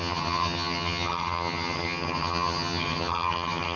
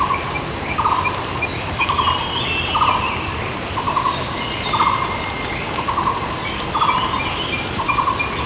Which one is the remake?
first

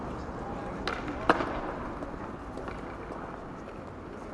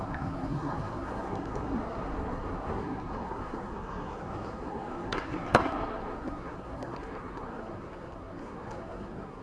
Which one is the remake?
second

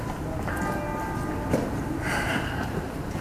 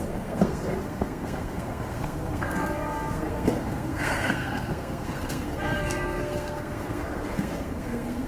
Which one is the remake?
second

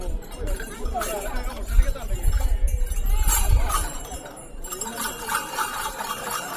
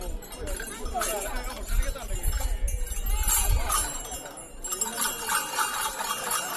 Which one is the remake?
first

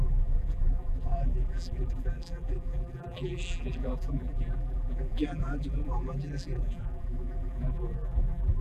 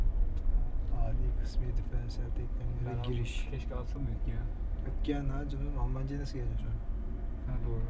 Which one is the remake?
first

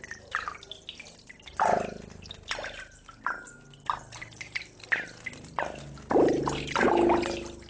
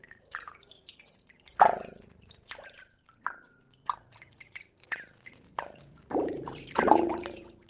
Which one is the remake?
second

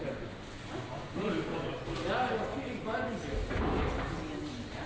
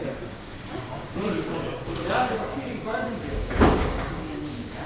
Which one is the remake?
second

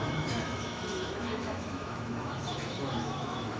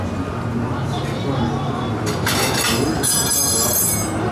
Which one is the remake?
first